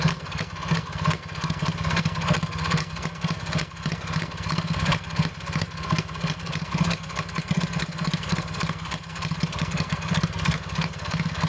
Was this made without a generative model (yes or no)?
no